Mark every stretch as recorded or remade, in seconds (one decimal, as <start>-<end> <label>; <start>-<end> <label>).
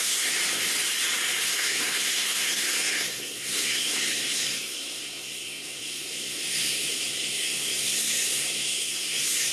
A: 0.0-0.4 remade; 0.4-1.4 recorded; 1.4-9.5 remade